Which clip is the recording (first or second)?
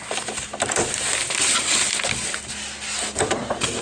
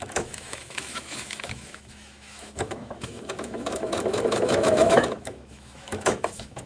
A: first